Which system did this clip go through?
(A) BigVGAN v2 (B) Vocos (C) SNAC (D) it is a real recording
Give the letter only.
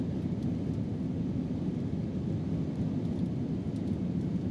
D